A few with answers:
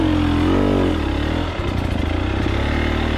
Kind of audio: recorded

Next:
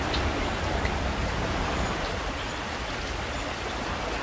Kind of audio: recorded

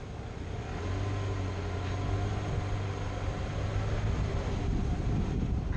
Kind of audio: recorded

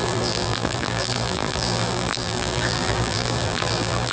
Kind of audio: remade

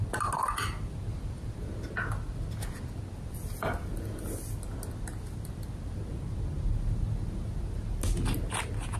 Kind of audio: recorded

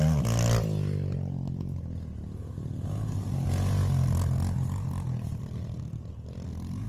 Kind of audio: recorded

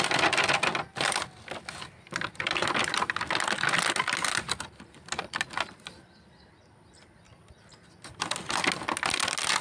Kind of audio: recorded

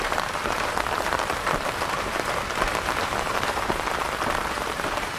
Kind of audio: remade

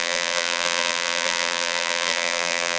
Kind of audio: remade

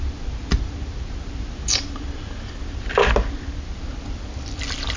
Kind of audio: recorded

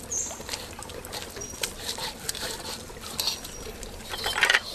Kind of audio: recorded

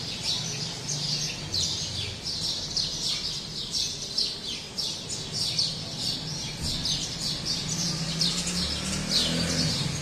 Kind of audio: recorded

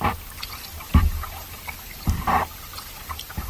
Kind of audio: recorded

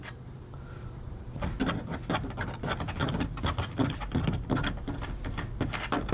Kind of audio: recorded